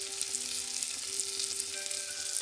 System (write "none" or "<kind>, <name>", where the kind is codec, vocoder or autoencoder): none